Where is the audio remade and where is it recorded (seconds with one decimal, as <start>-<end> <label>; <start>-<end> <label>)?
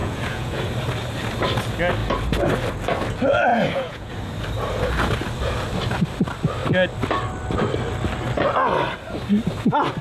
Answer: 0.0-0.6 remade; 0.6-3.5 recorded; 3.5-4.1 remade; 4.1-10.0 recorded